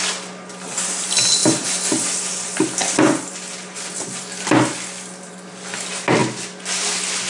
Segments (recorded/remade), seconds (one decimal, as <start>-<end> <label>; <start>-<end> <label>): 0.0-7.3 recorded